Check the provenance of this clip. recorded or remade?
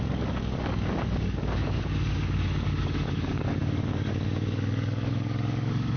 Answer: remade